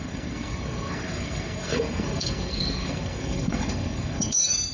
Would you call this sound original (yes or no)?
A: no